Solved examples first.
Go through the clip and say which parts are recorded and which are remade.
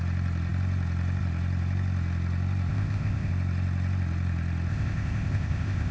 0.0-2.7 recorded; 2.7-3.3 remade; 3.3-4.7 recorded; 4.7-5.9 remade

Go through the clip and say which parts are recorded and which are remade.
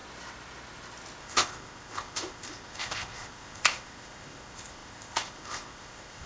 0.0-1.2 recorded; 1.2-6.3 remade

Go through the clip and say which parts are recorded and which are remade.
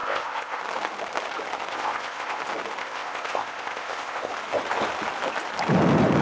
0.0-0.6 remade; 0.6-1.7 recorded; 1.7-2.4 remade; 2.4-2.8 recorded; 2.8-4.3 remade; 4.3-6.2 recorded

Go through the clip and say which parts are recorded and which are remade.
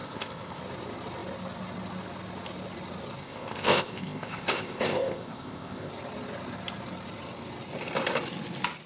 0.0-0.6 remade; 0.6-3.2 recorded; 3.2-5.9 remade; 5.9-8.9 recorded